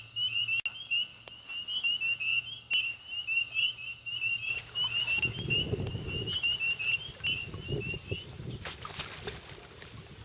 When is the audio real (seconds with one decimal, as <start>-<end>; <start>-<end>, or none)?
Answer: 0.0-2.3; 7.0-10.2